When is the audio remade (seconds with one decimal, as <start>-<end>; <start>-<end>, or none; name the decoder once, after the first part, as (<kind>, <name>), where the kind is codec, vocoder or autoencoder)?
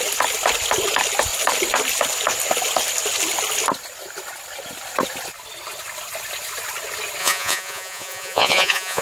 7.2-9.0 (vocoder, Vocos)